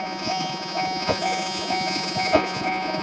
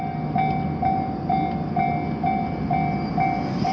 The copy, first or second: first